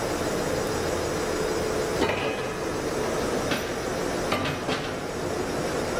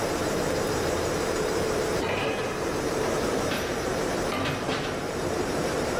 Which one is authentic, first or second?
first